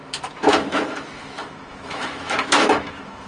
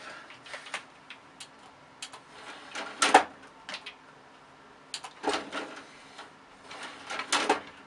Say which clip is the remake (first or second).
first